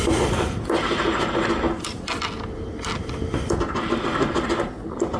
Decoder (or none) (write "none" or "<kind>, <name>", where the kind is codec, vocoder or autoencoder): none